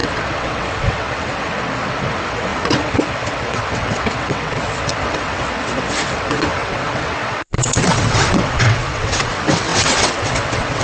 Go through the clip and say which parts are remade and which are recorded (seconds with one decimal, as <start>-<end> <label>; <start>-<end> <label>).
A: 0.0-10.8 remade